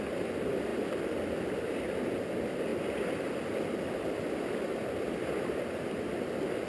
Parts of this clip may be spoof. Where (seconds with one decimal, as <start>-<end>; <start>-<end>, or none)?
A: none